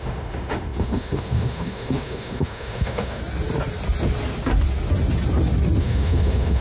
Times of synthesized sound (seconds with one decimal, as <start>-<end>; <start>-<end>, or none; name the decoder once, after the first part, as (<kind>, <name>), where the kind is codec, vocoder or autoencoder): 0.0-3.2 (autoencoder, DAC-VAE); 5.8-6.6